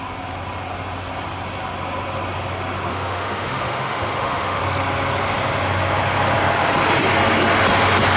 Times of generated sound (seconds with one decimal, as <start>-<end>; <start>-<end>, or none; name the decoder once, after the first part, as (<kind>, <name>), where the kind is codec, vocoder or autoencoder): 2.9-4.6 (autoencoder, DAC-VAE)